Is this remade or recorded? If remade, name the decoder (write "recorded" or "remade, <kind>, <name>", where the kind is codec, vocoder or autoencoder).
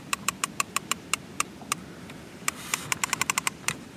remade, vocoder, BigVGAN v2